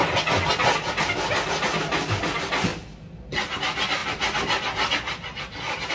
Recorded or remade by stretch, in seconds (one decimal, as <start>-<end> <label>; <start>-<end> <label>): 0.0-5.9 recorded